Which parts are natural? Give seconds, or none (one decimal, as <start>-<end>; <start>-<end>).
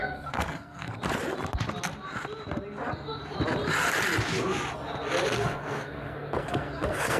1.0-5.3